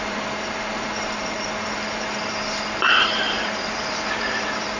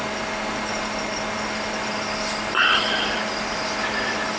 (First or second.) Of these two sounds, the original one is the second